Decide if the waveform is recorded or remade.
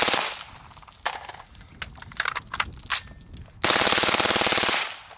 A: recorded